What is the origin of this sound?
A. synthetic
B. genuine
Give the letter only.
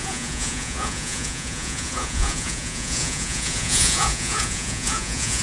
A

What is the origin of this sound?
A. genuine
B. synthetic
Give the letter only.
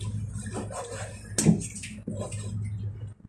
A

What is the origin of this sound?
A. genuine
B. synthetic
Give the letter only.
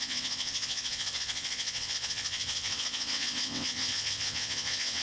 B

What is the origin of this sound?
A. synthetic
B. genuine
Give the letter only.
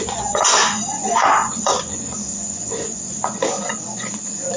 A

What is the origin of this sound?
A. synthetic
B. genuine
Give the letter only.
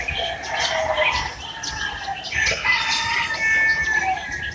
B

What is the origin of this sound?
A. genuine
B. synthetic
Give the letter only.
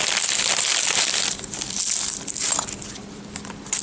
A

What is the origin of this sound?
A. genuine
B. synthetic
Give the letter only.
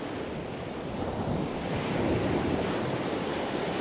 A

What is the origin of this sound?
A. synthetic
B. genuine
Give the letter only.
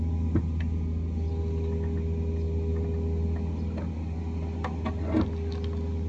B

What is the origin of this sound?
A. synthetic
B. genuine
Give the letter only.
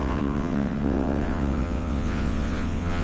A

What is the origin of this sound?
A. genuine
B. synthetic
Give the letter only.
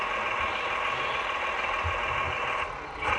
A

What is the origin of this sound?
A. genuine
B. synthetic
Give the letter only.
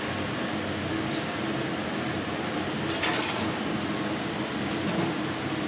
A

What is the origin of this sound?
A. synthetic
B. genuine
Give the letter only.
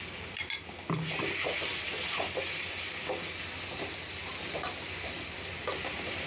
B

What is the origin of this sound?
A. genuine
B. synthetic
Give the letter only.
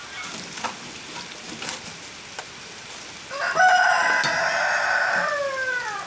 A